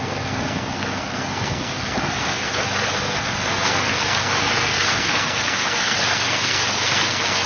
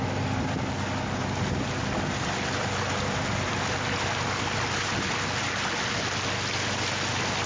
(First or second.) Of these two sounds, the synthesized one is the first